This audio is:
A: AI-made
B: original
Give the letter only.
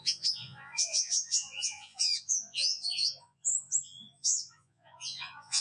A